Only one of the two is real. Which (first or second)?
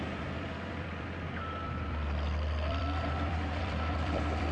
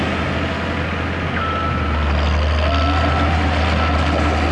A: second